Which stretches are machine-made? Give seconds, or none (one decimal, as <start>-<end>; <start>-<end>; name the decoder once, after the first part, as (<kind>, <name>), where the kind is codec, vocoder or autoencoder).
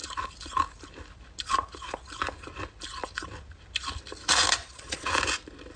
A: 4.6-5.1 (vocoder, Vocos)